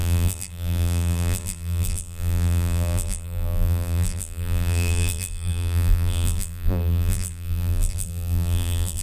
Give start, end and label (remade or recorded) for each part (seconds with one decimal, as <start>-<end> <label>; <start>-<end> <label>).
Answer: 0.0-9.0 remade